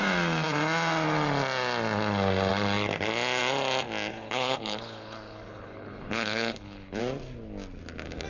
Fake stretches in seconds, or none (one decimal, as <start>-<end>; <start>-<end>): 4.1-7.0